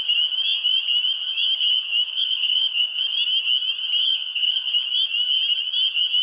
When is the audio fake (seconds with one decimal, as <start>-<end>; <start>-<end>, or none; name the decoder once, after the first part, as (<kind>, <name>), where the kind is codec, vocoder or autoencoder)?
2.1-3.0 (codec, SNAC); 4.0-4.7